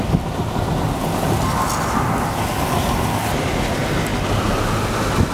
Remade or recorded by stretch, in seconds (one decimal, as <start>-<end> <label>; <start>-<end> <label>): 0.0-5.3 recorded